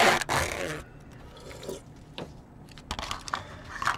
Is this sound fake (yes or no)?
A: no